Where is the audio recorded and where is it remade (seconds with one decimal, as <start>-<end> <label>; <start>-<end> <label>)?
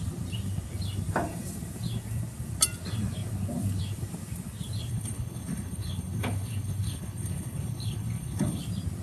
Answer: 0.0-4.9 recorded; 4.9-8.6 remade; 8.6-9.0 recorded